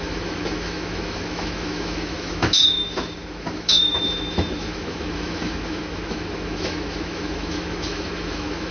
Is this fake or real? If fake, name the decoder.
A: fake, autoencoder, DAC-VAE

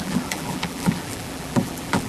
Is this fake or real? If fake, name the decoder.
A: fake, vocoder, BigVGAN v2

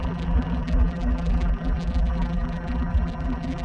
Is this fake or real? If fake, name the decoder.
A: fake, vocoder, BigVGAN v2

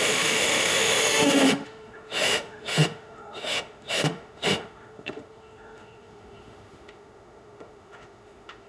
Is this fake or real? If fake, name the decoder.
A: fake, autoencoder, DAC-VAE